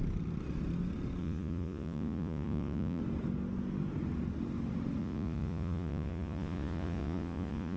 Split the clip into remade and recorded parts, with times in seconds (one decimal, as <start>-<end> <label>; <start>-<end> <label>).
0.0-1.2 recorded; 1.2-3.0 remade; 3.0-5.0 recorded; 5.0-7.8 remade